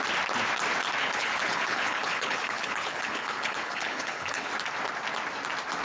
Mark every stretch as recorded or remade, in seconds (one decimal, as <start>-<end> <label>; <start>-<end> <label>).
0.0-1.0 recorded; 1.0-4.5 remade; 4.5-5.8 recorded